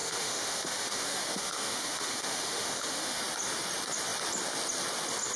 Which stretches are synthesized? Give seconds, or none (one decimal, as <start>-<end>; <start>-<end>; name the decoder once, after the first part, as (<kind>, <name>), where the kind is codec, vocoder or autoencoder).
0.0-3.2 (autoencoder, DAC-VAE)